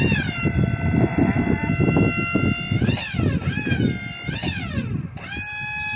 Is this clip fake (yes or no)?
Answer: no